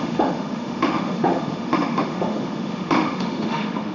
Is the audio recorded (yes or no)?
no